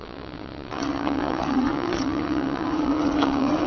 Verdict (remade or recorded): remade